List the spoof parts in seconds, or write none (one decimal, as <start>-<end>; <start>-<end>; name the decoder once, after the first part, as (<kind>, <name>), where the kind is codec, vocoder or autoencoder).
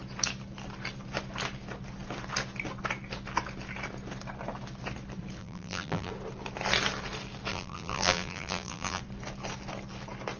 5.4-6.1 (vocoder, BigVGAN v2); 7.5-9.0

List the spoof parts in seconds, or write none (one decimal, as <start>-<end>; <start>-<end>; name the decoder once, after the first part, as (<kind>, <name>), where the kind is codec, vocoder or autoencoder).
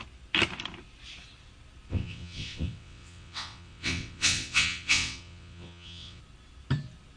1.9-6.2 (vocoder, WaveNeXt)